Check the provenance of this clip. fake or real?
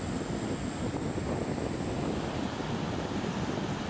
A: real